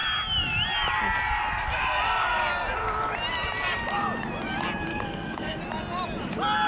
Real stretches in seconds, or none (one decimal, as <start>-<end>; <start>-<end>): 0.0-4.9; 5.6-6.7